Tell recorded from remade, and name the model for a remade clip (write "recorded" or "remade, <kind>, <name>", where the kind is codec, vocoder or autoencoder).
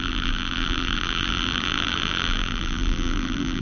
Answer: remade, vocoder, BigVGAN v2